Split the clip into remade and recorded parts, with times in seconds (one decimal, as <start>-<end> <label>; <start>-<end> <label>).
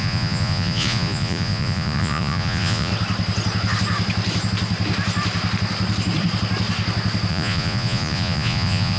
0.0-2.9 remade; 2.9-7.3 recorded; 7.3-9.0 remade